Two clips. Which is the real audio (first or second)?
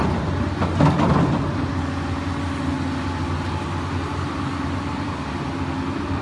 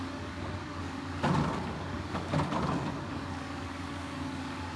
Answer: first